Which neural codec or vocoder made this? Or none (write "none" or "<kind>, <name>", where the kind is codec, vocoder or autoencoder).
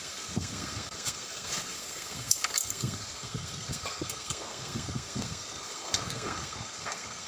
codec, SNAC